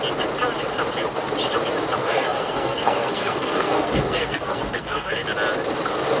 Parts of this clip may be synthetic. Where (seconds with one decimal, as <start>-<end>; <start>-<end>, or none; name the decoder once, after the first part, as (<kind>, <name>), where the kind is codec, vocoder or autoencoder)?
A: 2.0-5.1 (codec, SNAC)